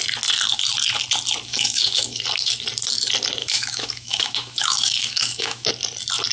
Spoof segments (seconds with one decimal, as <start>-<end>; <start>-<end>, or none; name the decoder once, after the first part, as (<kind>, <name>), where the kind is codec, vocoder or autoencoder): 1.5-2.2 (autoencoder, DAC-VAE); 3.4-5.7